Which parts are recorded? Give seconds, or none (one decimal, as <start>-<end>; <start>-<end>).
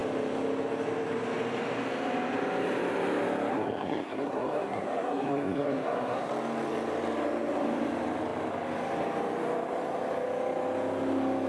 0.0-3.5; 6.3-11.5